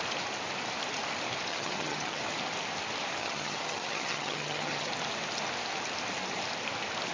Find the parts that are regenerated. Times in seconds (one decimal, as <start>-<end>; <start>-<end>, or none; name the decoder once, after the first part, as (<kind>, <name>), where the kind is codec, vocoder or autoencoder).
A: 1.5-2.2 (vocoder, HiFi-GAN); 3.2-4.9